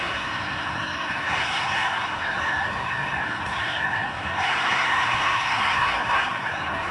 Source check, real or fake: fake